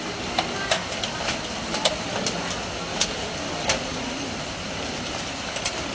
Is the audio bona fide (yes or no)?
yes